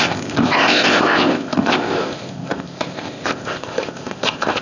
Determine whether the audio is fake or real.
fake